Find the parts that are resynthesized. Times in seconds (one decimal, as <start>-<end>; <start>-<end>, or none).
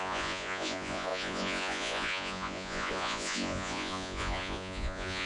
0.0-5.3